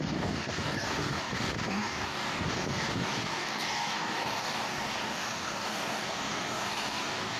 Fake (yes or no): yes